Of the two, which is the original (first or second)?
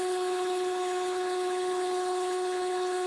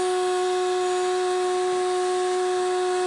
second